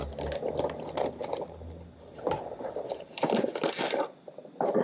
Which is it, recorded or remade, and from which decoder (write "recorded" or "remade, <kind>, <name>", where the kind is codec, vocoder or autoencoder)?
recorded